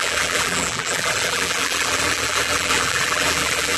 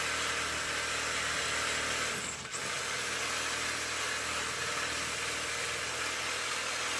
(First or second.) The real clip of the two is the second